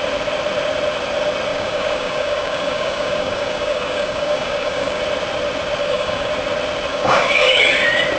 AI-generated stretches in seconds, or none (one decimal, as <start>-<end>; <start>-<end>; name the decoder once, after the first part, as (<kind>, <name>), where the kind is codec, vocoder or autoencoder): 1.5-5.0 (codec, DAC); 5.8-6.3; 6.9-7.6